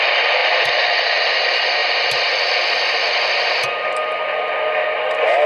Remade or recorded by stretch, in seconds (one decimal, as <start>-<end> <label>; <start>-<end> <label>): 0.0-5.5 recorded